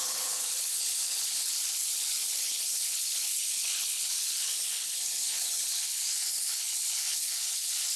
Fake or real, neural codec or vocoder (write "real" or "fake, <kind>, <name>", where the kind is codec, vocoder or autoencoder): fake, codec, HILCodec